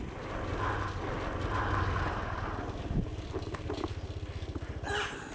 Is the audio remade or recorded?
recorded